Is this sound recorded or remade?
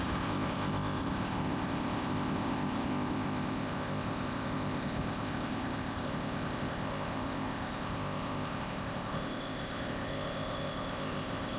remade